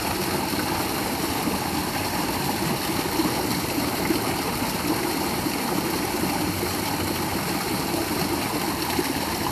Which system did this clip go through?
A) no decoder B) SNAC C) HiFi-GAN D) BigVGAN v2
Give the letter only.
A